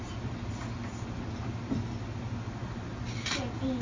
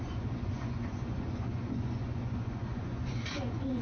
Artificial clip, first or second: second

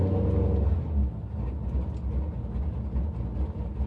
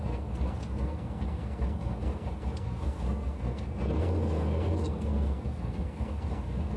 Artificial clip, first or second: second